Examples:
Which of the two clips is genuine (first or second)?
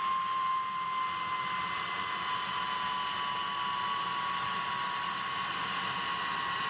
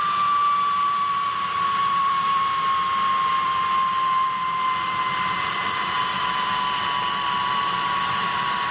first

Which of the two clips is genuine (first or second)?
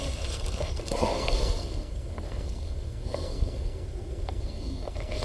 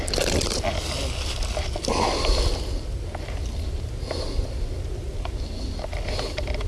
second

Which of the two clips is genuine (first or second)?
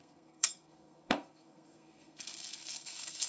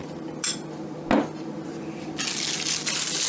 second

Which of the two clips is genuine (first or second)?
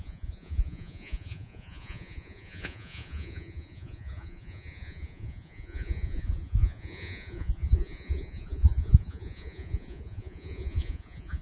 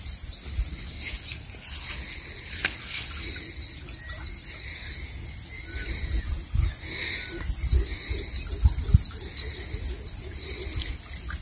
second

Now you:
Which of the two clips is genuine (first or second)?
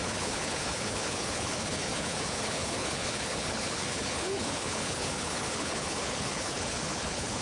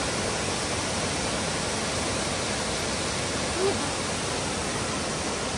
second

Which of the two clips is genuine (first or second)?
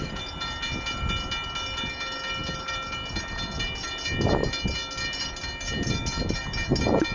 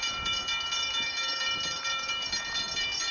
first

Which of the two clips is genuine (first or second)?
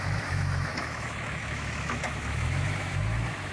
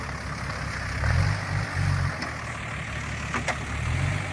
second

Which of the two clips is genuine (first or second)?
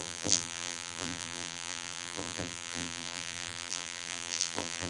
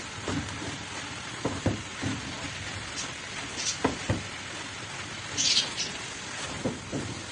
second